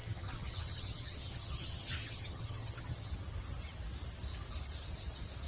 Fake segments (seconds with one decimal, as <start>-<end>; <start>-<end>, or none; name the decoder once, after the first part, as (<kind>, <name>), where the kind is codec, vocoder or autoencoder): 0.0-3.1 (vocoder, HiFi-GAN)